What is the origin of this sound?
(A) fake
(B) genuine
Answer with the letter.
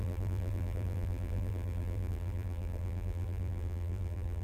A